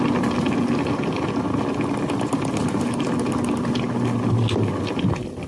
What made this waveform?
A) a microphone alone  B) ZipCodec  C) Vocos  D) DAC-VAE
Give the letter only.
A